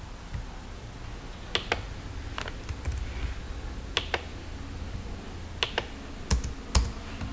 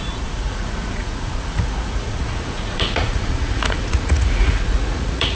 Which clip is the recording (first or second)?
first